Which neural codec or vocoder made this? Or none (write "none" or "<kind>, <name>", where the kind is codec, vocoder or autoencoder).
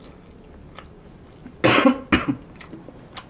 none